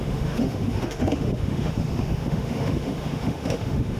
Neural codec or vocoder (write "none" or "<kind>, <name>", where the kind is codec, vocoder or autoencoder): autoencoder, DAC-VAE